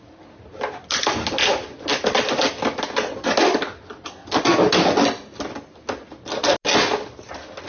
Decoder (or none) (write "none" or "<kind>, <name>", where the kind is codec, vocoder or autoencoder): none